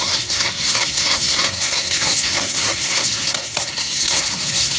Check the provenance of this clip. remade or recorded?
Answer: remade